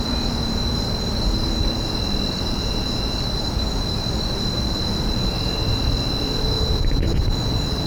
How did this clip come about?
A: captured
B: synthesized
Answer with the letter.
B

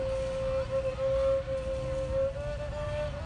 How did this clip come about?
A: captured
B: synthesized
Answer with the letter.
A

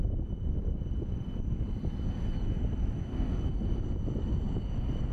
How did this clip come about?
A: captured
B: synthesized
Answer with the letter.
A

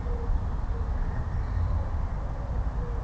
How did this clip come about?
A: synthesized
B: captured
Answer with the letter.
B